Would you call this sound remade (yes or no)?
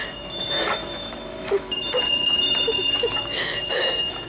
yes